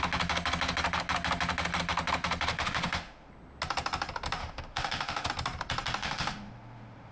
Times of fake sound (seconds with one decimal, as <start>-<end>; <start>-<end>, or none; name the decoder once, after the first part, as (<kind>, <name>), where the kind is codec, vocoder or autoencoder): 2.5-3.3 (autoencoder, DAC-VAE); 4.4-5.3; 6.0-7.1